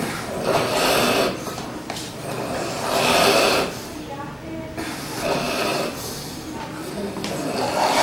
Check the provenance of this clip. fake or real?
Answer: fake